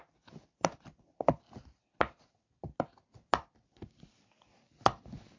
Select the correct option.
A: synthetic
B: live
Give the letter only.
B